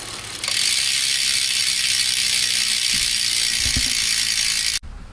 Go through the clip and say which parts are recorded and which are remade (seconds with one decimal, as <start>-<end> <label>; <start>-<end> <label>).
0.0-5.1 recorded